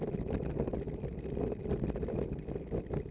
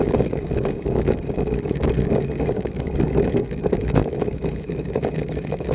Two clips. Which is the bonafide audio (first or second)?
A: first